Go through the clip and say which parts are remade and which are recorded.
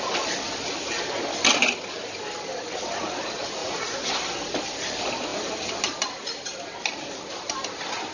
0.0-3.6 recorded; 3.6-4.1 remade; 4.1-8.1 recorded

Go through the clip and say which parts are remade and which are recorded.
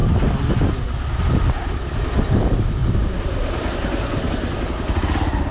0.0-1.2 recorded; 1.2-2.8 remade; 2.8-4.7 recorded; 4.7-5.5 remade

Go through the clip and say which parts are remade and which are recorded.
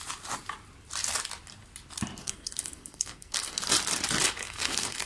0.0-2.2 recorded; 2.2-3.6 remade; 3.6-4.4 recorded; 4.4-5.1 remade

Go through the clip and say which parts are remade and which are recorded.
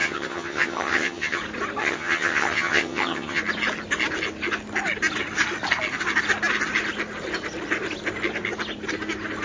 0.0-1.4 remade; 1.4-1.8 recorded; 1.8-3.4 remade; 3.4-9.4 recorded